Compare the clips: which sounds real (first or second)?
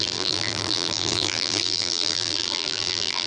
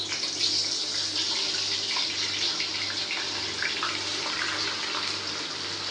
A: second